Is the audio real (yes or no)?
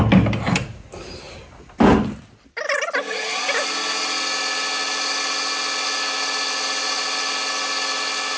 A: yes